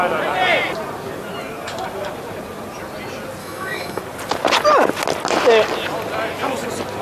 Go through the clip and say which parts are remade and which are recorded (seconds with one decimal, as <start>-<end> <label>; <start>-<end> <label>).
0.0-3.4 recorded; 3.4-4.0 remade; 4.0-7.0 recorded